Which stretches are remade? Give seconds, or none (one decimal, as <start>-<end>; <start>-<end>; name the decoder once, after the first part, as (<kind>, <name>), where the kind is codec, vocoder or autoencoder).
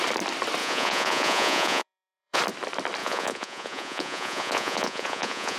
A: 0.6-2.4 (vocoder, Vocos); 3.0-5.6